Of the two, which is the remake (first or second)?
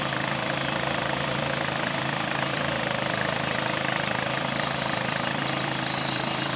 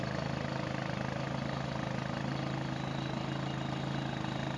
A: first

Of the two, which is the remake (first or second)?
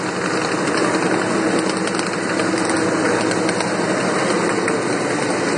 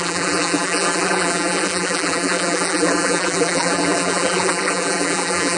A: second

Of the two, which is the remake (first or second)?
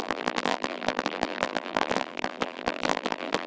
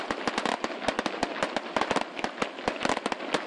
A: first